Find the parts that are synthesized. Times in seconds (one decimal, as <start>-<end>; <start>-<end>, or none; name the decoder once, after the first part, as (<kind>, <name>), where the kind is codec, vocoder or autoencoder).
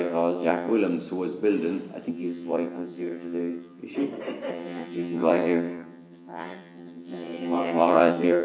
0.0-0.7 (vocoder, HiFi-GAN); 2.1-3.8; 4.5-8.4